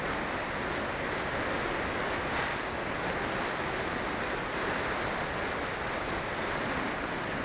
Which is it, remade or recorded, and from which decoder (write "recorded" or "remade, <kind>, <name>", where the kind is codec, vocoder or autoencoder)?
recorded